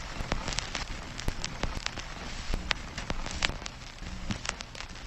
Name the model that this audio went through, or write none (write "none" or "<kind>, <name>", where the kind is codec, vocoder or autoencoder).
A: vocoder, BigVGAN v2